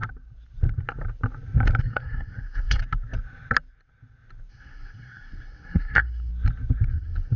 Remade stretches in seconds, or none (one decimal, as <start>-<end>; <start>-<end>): 1.8-2.8; 4.5-6.3; 6.9-7.4